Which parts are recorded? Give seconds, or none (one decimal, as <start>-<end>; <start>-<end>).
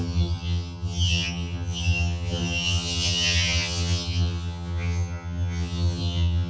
none